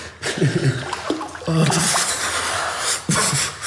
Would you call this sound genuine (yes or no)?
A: yes